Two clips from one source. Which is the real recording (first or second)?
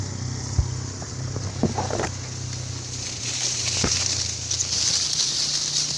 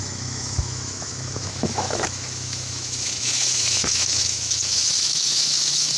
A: first